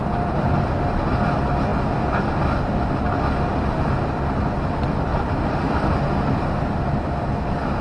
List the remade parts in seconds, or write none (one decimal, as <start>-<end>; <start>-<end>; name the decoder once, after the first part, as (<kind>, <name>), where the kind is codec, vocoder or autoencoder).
5.1-6.0 (vocoder, BigVGAN v2)